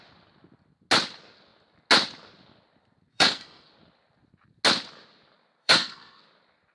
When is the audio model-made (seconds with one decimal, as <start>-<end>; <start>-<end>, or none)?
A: 3.1-3.7; 5.6-6.2